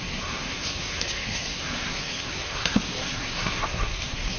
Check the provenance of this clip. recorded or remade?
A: remade